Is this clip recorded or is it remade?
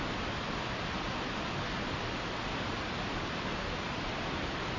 recorded